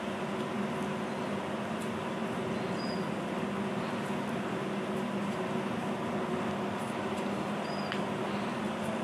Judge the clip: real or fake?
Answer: real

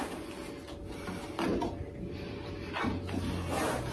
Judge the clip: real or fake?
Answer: real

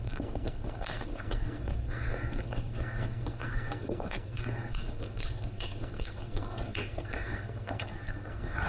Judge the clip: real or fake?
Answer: fake